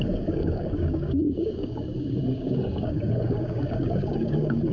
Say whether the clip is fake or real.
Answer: fake